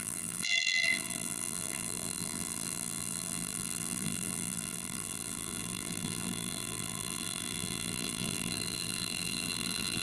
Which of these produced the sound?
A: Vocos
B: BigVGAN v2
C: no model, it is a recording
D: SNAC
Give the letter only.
B